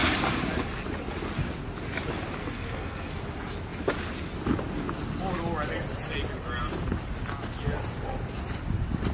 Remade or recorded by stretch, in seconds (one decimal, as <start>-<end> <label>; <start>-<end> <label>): 0.0-2.4 recorded; 2.4-3.2 remade; 3.2-9.1 recorded